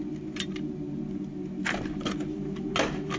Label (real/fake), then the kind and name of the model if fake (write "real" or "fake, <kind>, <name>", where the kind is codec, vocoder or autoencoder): real